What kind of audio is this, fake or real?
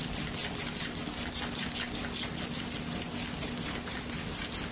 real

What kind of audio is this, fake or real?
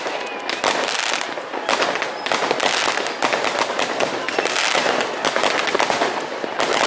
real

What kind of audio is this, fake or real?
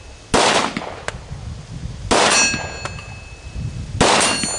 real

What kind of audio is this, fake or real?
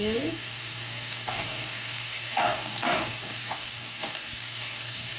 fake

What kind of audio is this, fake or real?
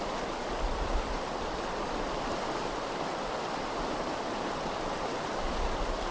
real